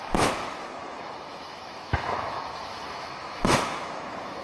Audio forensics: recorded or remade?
remade